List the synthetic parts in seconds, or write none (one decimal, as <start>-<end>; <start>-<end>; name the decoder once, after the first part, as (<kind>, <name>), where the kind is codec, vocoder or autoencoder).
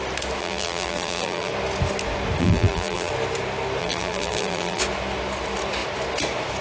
0.4-1.5 (vocoder, BigVGAN v2); 2.4-3.1; 3.8-4.8